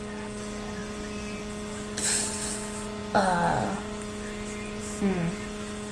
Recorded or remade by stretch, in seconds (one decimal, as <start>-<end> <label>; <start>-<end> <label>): 0.0-5.9 recorded